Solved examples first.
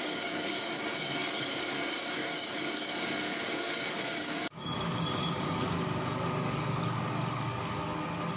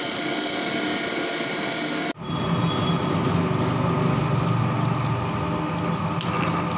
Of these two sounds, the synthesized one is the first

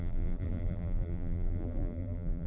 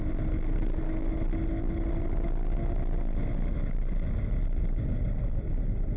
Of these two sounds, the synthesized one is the first